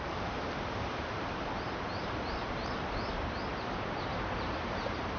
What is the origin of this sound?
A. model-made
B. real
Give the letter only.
A